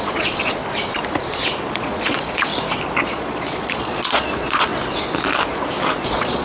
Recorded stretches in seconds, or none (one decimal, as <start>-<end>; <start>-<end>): 0.6-1.7; 2.5-3.0; 4.7-5.8